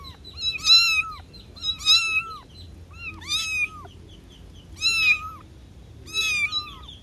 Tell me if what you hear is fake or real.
real